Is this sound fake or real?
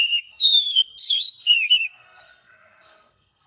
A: fake